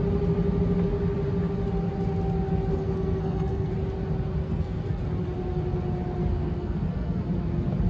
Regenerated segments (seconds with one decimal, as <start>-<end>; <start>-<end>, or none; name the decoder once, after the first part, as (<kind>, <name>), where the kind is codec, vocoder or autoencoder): 2.7-3.7 (codec, SNAC); 4.4-5.0; 6.2-7.2